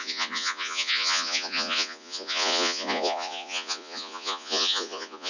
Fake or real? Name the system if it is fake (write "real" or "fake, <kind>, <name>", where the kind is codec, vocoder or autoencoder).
fake, vocoder, Vocos